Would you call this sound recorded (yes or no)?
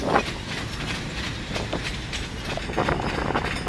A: yes